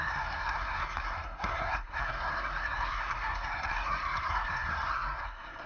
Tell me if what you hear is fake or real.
fake